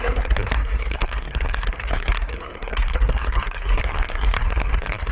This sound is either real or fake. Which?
fake